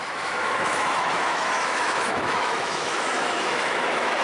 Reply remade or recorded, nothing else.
remade